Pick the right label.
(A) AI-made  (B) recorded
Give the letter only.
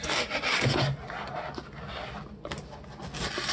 B